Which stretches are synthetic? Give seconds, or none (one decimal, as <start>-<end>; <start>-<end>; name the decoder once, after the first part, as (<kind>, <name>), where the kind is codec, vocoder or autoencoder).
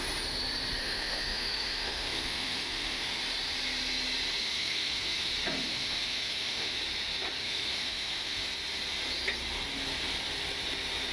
0.8-3.2 (autoencoder, DAC-VAE); 4.4-5.3; 5.7-6.8; 7.4-8.5